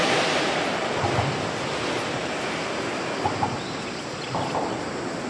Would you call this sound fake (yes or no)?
yes